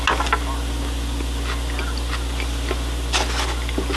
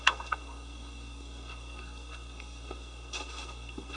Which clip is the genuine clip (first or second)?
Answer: first